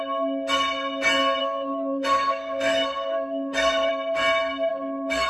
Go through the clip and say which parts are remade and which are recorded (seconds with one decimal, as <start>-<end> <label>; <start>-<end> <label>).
0.0-1.4 recorded; 1.4-3.9 remade; 3.9-4.7 recorded; 4.7-5.3 remade